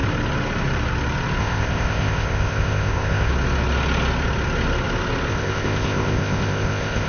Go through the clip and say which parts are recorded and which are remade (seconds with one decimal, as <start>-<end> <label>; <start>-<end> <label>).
0.0-1.4 recorded; 1.4-3.3 remade; 3.3-5.3 recorded; 5.3-7.1 remade